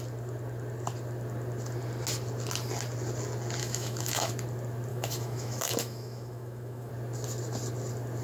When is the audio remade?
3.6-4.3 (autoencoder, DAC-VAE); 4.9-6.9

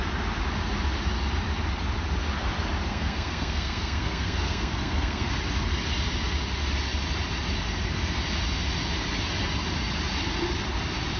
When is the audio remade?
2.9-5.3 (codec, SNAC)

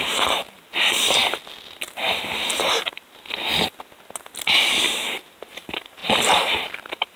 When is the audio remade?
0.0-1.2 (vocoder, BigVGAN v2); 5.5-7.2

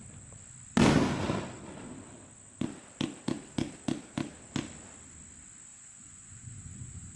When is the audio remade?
5.7-7.2 (vocoder, Vocos)

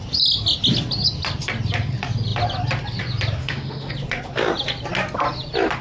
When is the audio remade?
3.4-3.9 (autoencoder, DAC-VAE)

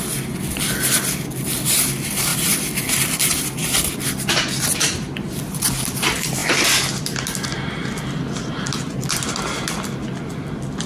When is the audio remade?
none